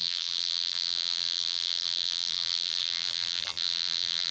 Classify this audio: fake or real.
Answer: fake